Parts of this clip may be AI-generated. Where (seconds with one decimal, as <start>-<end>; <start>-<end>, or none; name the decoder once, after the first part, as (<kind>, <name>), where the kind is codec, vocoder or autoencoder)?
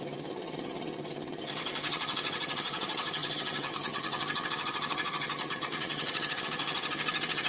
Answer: 0.0-7.5 (vocoder, HiFi-GAN)